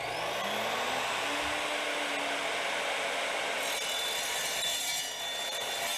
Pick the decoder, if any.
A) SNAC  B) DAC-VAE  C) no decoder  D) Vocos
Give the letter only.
C